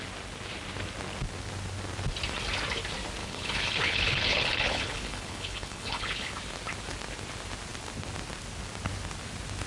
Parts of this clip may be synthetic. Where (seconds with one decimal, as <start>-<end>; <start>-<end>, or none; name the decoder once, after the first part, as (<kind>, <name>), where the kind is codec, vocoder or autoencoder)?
3.2-6.3 (codec, HILCodec)